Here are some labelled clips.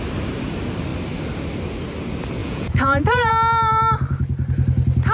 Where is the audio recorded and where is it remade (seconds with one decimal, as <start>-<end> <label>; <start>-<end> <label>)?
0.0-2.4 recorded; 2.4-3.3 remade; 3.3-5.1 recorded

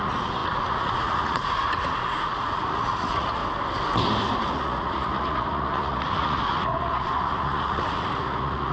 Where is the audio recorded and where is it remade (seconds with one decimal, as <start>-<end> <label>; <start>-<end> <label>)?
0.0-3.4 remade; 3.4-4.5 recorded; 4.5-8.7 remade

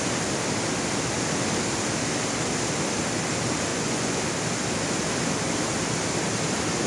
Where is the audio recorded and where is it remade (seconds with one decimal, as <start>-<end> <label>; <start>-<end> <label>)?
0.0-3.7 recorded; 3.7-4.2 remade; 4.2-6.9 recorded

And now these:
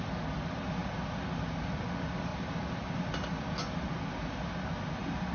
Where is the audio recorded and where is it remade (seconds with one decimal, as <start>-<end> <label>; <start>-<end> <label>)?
0.0-5.3 recorded

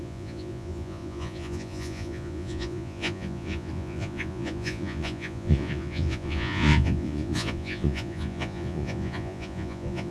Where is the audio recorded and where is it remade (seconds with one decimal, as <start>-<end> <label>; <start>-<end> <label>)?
0.0-10.1 remade

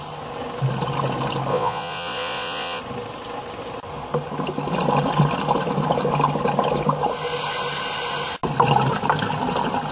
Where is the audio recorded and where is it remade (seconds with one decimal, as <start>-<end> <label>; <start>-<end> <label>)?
0.0-1.5 recorded; 1.5-2.8 remade; 2.8-9.9 recorded